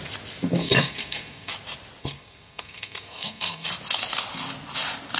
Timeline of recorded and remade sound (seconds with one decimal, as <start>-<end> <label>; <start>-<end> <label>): 0.0-0.6 recorded; 0.6-1.5 remade; 1.5-2.0 recorded; 2.0-3.7 remade; 3.7-5.2 recorded